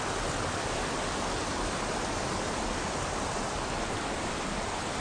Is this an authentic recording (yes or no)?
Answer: yes